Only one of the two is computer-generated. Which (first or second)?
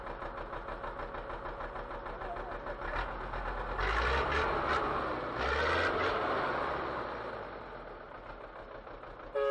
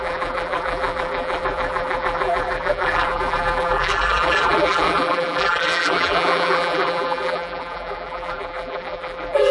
second